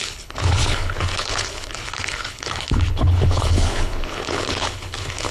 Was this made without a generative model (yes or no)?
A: no